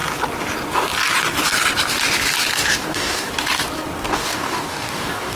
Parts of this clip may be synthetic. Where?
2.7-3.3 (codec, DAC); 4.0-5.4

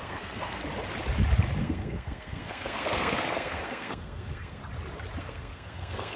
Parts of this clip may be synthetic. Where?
0.0-0.6 (codec, SNAC); 1.6-4.6; 5.2-6.2

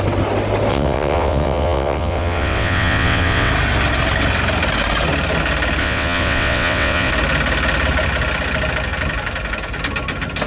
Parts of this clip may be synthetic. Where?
0.7-3.5 (vocoder, WaveNeXt); 5.8-7.1

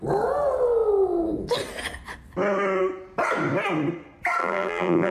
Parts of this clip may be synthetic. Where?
4.4-5.1 (vocoder, BigVGAN v2)

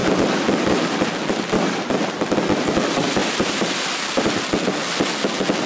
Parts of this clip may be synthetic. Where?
0.0-2.4 (vocoder, BigVGAN v2); 3.2-4.4